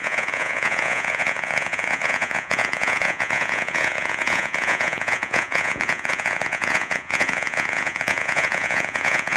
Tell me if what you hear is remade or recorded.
remade